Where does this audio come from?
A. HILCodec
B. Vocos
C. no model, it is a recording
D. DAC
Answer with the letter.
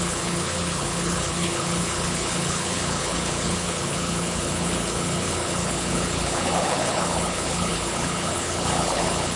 A